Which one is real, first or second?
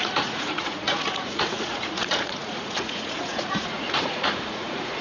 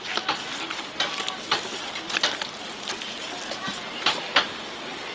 second